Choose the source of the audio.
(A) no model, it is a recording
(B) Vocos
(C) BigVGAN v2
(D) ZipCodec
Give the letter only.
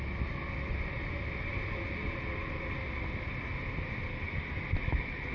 A